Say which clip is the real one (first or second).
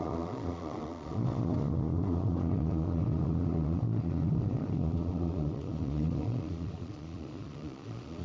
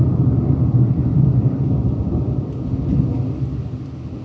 second